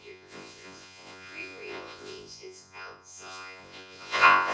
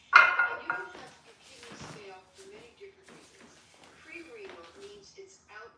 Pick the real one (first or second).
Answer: second